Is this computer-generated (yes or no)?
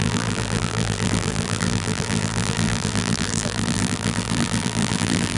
yes